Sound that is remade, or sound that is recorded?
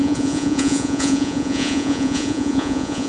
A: remade